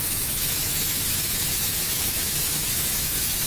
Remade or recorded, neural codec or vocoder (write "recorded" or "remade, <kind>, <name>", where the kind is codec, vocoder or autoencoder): remade, autoencoder, DAC-VAE